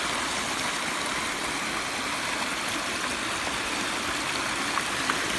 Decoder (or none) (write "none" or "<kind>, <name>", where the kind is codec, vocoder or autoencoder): none